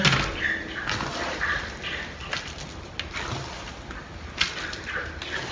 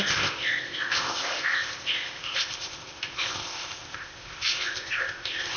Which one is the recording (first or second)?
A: first